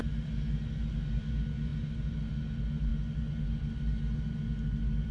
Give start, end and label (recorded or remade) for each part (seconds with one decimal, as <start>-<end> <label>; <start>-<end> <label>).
0.0-5.1 recorded

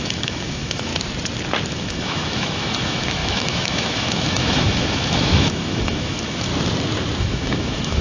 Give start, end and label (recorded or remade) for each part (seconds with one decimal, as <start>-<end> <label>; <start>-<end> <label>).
0.0-0.9 remade; 0.9-1.7 recorded; 1.7-6.5 remade; 6.5-7.2 recorded; 7.2-8.0 remade

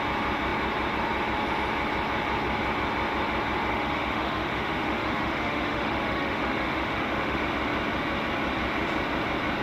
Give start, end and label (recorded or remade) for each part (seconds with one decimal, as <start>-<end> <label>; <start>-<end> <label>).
0.0-3.7 recorded; 3.7-7.4 remade; 7.4-9.6 recorded

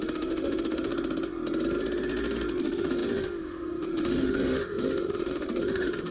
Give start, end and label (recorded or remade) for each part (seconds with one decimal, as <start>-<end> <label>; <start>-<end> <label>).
0.0-0.9 remade; 0.9-2.6 recorded; 2.6-6.1 remade